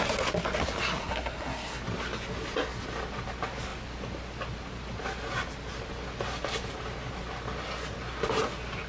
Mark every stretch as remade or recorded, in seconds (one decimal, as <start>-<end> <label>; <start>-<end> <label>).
0.0-1.0 recorded; 1.0-1.8 remade; 1.8-8.9 recorded